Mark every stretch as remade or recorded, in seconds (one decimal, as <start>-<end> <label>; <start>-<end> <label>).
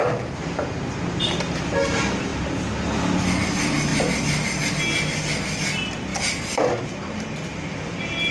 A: 0.0-8.3 recorded